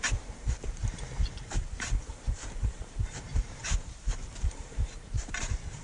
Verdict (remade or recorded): remade